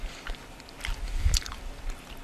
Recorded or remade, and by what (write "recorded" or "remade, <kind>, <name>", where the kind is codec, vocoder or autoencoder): remade, vocoder, BigVGAN v2